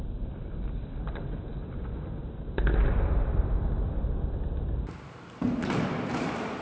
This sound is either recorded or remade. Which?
recorded